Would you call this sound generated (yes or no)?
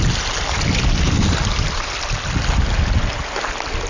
no